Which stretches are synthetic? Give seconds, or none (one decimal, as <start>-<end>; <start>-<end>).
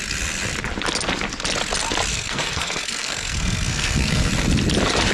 2.1-4.3